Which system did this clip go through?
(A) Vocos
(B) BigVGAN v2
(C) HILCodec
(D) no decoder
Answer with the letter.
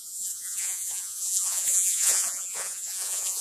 A